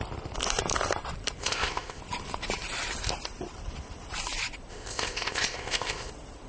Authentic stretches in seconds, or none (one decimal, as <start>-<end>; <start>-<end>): 0.0-1.4; 2.0-4.7; 6.1-6.5